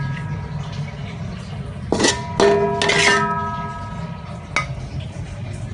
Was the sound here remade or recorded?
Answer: recorded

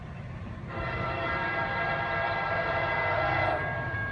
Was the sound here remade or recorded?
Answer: remade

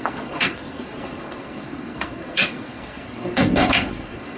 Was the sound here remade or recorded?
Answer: remade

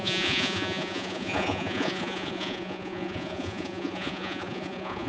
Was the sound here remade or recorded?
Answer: remade